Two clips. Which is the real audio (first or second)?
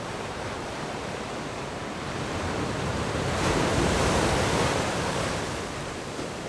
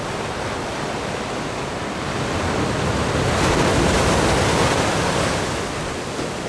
second